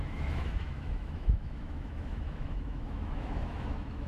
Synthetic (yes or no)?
yes